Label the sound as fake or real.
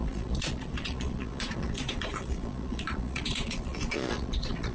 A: fake